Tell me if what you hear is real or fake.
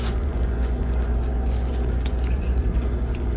fake